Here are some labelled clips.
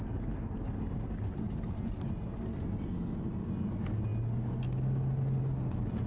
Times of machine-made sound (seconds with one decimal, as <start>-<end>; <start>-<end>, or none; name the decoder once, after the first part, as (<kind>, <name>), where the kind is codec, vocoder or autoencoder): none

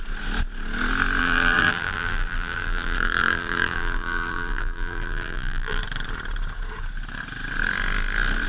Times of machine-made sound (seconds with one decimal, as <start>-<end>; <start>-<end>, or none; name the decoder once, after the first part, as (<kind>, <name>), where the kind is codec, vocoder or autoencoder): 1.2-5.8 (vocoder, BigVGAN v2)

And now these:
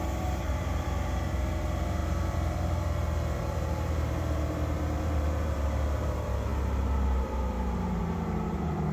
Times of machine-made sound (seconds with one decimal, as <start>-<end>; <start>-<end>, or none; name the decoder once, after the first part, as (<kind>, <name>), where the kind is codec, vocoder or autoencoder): 0.0-8.9 (vocoder, BigVGAN v2)

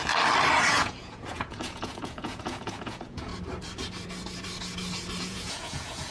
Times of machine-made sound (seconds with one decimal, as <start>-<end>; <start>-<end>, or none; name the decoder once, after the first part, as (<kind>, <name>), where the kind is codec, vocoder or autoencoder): 0.7-3.3 (vocoder, Vocos); 5.2-6.1

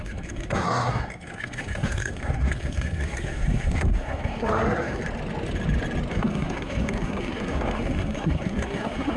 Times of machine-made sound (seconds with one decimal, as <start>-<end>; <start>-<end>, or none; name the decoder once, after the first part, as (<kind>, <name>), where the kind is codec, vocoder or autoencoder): 0.0-5.0 (codec, SNAC); 6.1-9.2